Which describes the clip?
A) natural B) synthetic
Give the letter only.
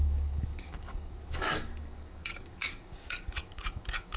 B